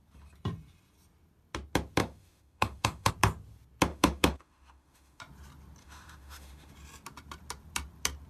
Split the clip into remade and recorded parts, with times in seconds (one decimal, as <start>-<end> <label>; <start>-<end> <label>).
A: 0.0-2.0 recorded; 2.0-3.1 remade; 3.1-3.9 recorded; 3.9-5.2 remade; 5.2-5.8 recorded; 5.8-6.7 remade; 6.7-8.3 recorded